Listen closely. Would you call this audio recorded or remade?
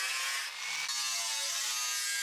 recorded